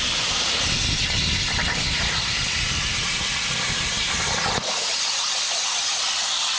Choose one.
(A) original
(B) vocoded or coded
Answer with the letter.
A